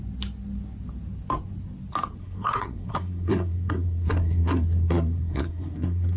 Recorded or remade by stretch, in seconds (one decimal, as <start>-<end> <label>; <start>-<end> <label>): 0.0-2.2 recorded; 2.2-6.2 remade